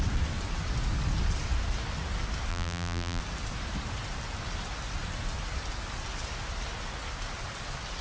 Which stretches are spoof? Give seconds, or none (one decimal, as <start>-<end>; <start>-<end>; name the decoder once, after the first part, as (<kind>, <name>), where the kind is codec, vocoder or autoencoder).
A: 2.5-3.2 (vocoder, BigVGAN v2)